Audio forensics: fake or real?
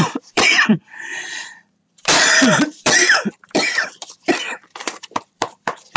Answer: fake